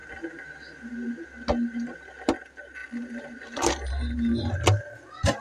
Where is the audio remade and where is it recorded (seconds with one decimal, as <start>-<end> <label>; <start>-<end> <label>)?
0.0-2.8 recorded; 2.8-3.9 remade; 3.9-5.4 recorded